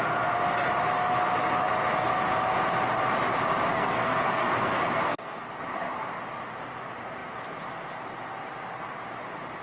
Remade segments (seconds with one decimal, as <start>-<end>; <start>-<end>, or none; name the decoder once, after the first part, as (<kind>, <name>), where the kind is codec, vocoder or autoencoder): 3.7-5.5 (codec, SNAC)